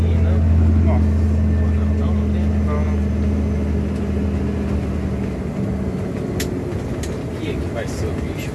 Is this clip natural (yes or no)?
yes